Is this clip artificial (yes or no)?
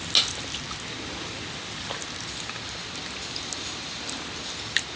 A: no